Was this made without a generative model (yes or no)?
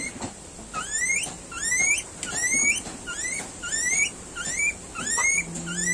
yes